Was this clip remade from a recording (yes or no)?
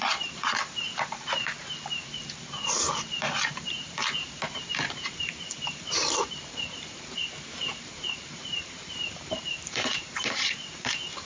yes